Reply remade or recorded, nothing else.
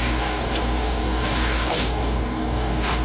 remade